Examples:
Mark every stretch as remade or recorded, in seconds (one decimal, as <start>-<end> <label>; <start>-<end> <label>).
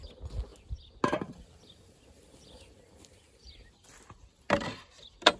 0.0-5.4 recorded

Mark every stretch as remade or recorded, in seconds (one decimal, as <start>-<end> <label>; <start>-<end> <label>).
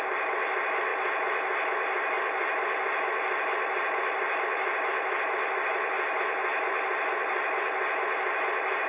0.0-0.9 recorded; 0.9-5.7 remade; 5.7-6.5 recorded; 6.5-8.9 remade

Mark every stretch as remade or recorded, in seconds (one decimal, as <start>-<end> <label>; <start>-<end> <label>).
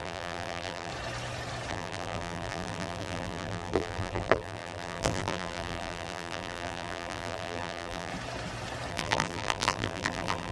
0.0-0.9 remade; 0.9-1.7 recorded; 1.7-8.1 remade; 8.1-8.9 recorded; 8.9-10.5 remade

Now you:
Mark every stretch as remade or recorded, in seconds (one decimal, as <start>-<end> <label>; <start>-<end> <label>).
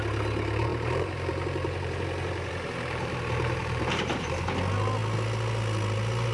0.0-0.7 recorded; 0.7-4.5 remade; 4.5-6.3 recorded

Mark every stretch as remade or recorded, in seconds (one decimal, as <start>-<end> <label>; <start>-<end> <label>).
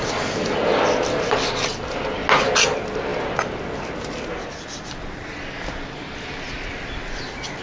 0.0-0.7 remade; 0.7-7.6 recorded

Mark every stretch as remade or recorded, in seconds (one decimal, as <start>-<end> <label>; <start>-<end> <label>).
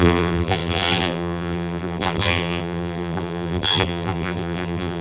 0.0-5.0 remade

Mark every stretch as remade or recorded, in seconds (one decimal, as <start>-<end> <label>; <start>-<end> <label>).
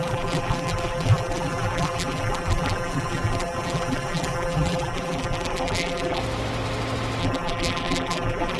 0.0-6.2 remade; 6.2-7.2 recorded; 7.2-8.6 remade